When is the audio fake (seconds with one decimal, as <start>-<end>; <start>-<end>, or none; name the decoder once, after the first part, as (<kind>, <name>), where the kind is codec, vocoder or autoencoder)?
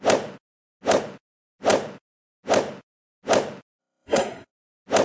3.8-4.5 (codec, SNAC)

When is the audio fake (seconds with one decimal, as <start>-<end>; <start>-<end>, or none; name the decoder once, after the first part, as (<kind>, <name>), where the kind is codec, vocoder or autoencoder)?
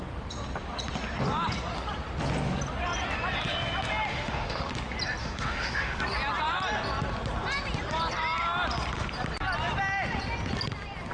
4.1-4.7 (autoencoder, DAC-VAE); 5.2-6.0